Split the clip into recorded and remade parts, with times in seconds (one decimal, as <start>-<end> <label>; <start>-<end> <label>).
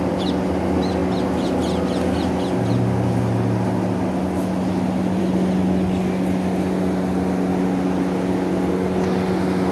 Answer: 0.0-9.7 recorded